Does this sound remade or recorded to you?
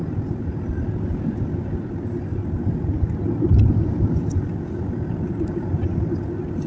recorded